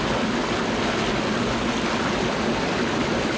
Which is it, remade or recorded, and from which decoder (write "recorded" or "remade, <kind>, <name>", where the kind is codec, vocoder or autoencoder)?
recorded